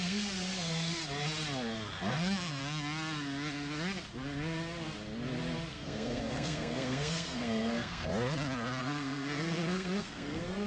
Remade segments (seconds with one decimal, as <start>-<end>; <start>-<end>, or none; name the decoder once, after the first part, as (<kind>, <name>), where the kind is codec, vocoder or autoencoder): 0.0-1.0 (codec, SNAC); 2.1-2.6; 5.7-8.1; 8.8-10.7